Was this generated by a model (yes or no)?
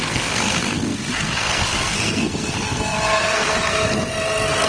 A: yes